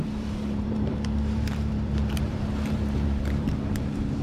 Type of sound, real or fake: fake